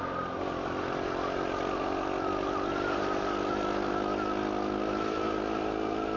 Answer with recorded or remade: recorded